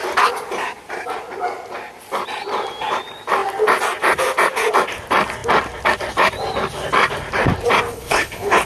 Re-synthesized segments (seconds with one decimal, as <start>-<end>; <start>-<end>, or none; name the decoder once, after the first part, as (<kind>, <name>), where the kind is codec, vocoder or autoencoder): 7.9-8.7 (codec, HILCodec)